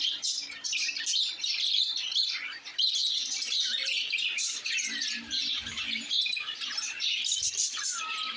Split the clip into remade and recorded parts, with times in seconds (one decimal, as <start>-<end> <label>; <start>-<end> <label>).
0.0-0.4 remade; 0.4-1.4 recorded; 1.4-8.4 remade

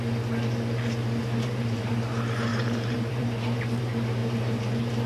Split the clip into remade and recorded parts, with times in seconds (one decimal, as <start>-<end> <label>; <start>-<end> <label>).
0.0-1.2 recorded; 1.2-1.9 remade; 1.9-2.5 recorded; 2.5-3.8 remade; 3.8-4.2 recorded; 4.2-5.1 remade

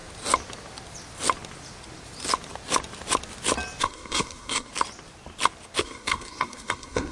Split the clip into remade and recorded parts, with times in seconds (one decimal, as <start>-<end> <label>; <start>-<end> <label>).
0.0-3.8 recorded; 3.8-4.7 remade; 4.7-5.8 recorded; 5.8-7.1 remade

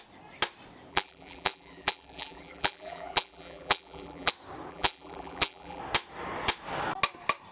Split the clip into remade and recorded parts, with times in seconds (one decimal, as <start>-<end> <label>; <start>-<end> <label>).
0.0-0.9 recorded; 0.9-4.3 remade; 4.3-4.7 recorded; 4.7-5.8 remade; 5.8-7.5 recorded